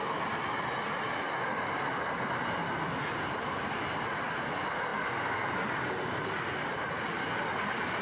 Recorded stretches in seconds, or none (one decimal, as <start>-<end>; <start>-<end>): 0.0-8.0